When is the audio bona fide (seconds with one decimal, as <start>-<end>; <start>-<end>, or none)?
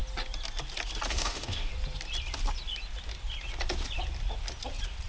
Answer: 0.0-1.1; 1.7-5.1